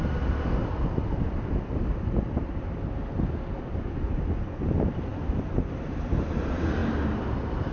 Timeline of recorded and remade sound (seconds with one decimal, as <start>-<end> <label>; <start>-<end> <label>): 0.0-7.7 recorded